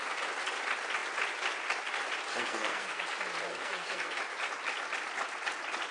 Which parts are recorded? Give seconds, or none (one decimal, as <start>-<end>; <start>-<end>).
0.0-2.3; 3.0-3.5; 4.2-5.9

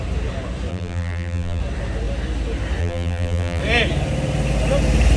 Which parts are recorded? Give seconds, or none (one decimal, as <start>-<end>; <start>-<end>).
0.0-0.7; 1.6-2.8; 3.6-5.2

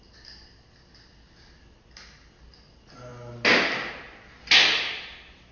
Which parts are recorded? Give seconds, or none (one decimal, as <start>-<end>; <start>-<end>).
0.0-5.5

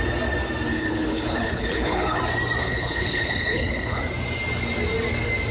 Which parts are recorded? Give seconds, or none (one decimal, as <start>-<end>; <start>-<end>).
0.0-0.7; 2.2-2.6; 4.0-5.5